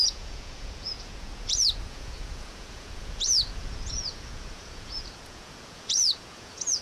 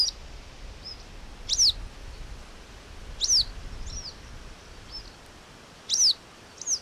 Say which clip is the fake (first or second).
first